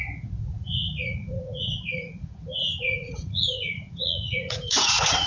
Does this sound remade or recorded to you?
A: remade